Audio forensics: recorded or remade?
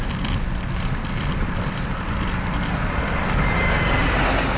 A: recorded